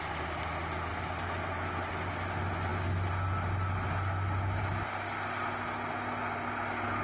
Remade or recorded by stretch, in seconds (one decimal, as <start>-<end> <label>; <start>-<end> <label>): 0.0-7.0 recorded